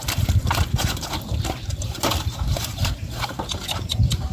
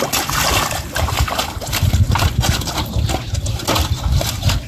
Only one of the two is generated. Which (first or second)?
first